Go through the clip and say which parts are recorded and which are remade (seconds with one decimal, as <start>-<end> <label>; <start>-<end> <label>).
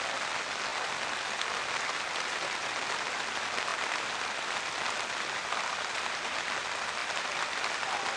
0.0-8.2 recorded